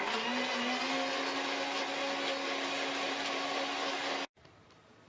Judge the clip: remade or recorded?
recorded